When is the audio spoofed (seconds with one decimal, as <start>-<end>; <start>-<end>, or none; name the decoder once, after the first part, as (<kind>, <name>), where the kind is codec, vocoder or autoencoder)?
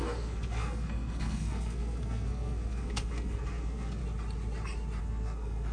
0.0-4.0 (codec, SNAC); 5.0-5.7